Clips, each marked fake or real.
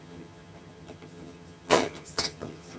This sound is fake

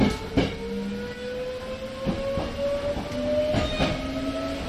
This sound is real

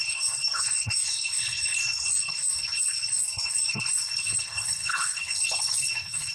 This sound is fake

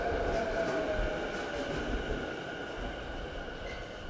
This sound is real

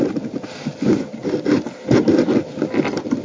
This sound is real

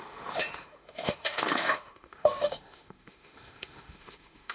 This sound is fake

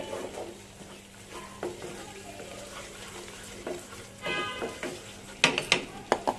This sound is real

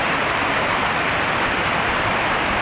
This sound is real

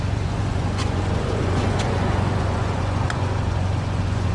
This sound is fake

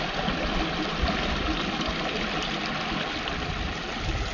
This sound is real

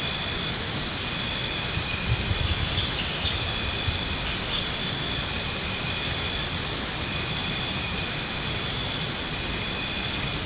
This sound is real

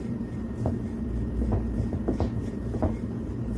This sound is fake